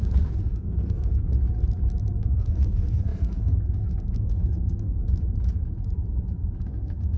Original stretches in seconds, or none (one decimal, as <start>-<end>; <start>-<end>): 1.3-2.2; 5.0-6.6